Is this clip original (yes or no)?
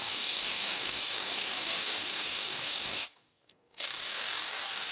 no